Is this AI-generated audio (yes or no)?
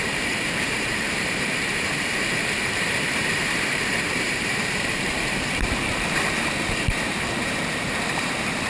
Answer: yes